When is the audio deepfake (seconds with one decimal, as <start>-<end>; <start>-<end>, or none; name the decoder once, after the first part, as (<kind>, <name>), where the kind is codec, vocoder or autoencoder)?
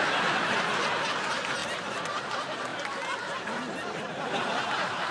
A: none